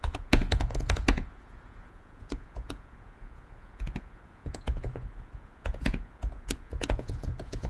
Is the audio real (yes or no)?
no